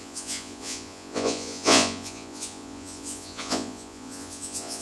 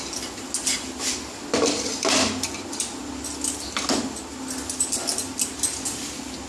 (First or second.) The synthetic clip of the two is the first